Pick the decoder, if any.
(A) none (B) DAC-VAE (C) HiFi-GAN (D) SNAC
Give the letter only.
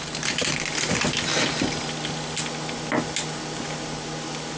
A